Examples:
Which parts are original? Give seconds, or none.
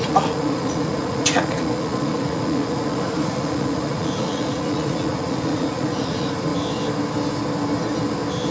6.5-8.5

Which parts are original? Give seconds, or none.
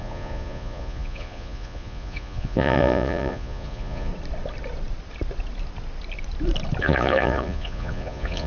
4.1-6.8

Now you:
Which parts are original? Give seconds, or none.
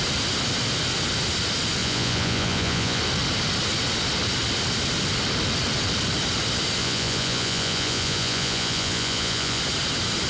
0.0-1.8; 3.0-6.8; 9.6-10.3